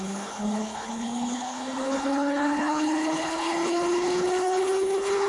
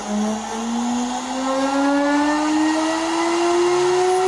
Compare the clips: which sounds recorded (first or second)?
second